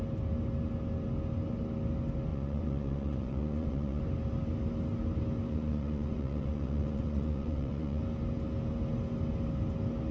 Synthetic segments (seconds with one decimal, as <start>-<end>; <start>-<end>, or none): 2.3-4.0; 5.5-8.0